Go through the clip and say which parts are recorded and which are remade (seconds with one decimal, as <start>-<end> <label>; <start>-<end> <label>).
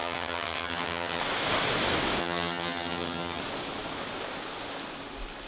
0.0-1.2 remade; 1.2-2.2 recorded; 2.2-3.4 remade; 3.4-5.5 recorded